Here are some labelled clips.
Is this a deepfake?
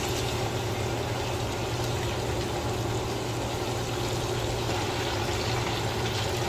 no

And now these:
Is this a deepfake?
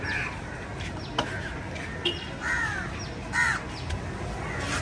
no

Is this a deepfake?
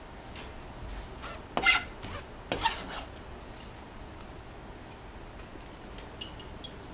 no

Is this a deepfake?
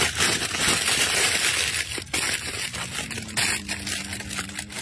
no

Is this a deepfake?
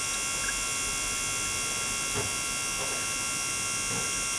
no